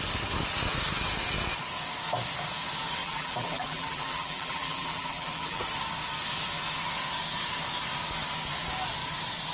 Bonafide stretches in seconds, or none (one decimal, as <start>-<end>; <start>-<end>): 0.0-3.0; 5.6-9.5